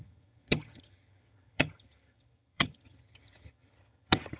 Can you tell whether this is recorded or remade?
remade